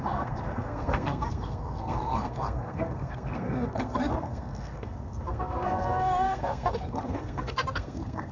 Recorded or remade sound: remade